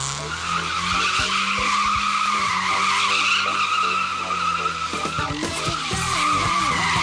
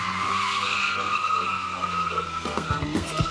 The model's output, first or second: second